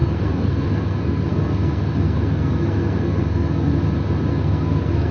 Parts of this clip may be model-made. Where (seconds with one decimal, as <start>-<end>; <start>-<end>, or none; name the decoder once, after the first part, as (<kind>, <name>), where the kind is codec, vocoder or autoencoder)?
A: 0.0-3.7 (codec, SNAC); 4.3-5.1